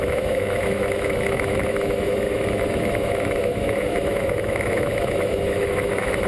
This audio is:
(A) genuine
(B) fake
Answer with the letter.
B